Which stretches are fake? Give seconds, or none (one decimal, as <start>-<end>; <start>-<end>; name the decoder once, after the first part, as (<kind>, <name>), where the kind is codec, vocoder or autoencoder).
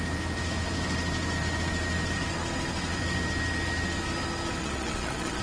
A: 4.6-5.4 (vocoder, Vocos)